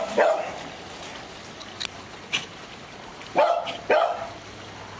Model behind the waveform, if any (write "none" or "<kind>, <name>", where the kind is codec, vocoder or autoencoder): none